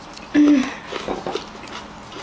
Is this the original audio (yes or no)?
yes